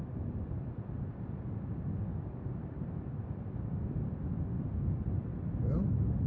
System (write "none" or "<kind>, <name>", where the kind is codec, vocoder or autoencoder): none